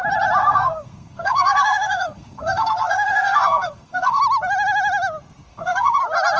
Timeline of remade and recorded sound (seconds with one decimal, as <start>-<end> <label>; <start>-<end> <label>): 0.0-0.4 recorded; 0.4-4.2 remade; 4.2-5.5 recorded; 5.5-6.0 remade; 6.0-6.4 recorded